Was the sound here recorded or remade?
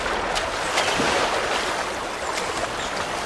recorded